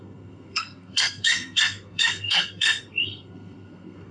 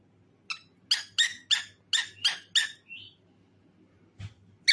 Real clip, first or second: second